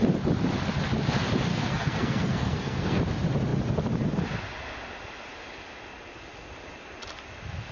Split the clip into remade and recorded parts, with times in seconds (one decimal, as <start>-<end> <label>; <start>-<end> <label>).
0.0-1.5 recorded; 1.5-3.0 remade; 3.0-7.7 recorded